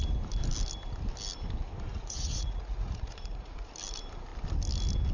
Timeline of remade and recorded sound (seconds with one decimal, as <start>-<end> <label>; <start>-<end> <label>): 0.0-1.9 recorded; 1.9-3.7 remade; 3.7-5.1 recorded